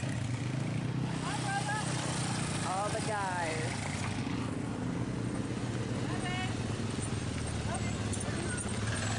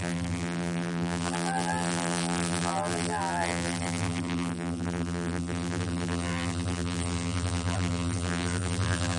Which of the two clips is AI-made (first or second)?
second